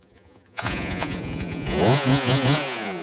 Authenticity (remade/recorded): remade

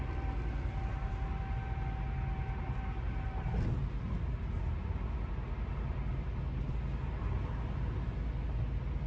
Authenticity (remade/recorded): recorded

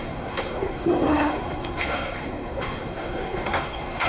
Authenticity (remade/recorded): remade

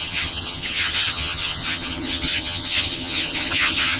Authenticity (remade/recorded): remade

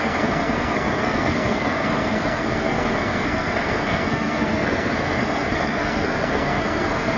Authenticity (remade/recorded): remade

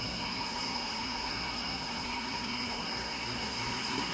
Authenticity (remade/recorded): remade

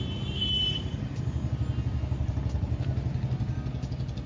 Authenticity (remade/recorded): recorded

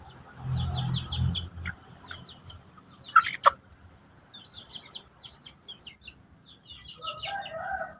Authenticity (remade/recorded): recorded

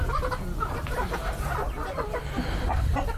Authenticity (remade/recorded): remade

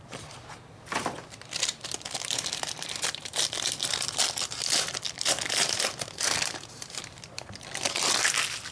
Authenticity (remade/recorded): remade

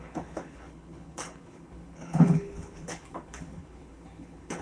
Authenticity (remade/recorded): remade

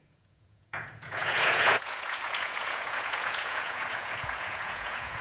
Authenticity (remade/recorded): remade